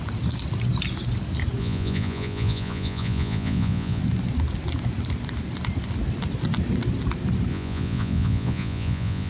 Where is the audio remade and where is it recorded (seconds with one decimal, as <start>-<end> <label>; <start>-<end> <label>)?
0.0-1.6 recorded; 1.6-4.0 remade; 4.0-7.5 recorded; 7.5-9.3 remade